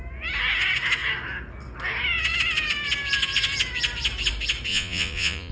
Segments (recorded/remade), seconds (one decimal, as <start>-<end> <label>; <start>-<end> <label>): 0.0-4.7 recorded; 4.7-5.5 remade